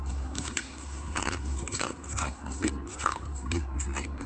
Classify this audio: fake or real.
fake